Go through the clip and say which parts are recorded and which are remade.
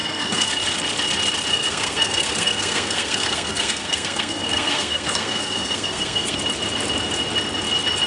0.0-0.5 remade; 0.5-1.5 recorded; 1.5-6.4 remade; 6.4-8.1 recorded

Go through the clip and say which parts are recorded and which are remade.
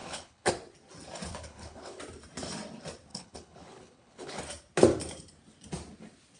0.0-0.5 remade; 0.5-1.3 recorded; 1.3-2.0 remade; 2.0-3.1 recorded; 3.1-4.4 remade; 4.4-6.4 recorded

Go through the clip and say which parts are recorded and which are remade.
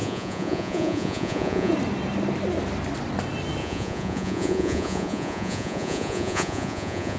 0.0-1.7 remade; 1.7-3.6 recorded; 3.6-7.2 remade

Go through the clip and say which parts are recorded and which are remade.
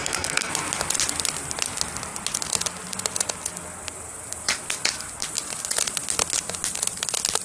0.0-0.5 remade; 0.5-7.4 recorded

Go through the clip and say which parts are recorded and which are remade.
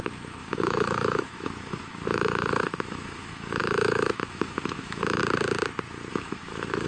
0.0-5.2 remade; 5.2-6.1 recorded; 6.1-6.9 remade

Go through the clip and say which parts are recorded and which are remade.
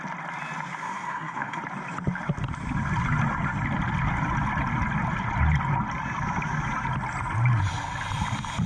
0.0-0.8 recorded; 0.8-1.6 remade; 1.6-8.7 recorded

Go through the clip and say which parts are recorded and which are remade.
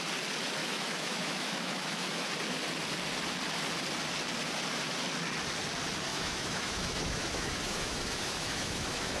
0.0-0.6 recorded; 0.6-2.3 remade; 2.3-6.1 recorded; 6.1-9.2 remade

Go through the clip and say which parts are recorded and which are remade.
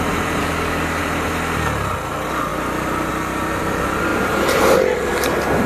0.0-0.4 recorded; 0.4-1.0 remade; 1.0-5.7 recorded